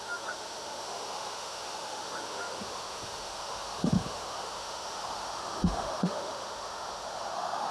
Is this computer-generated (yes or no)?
yes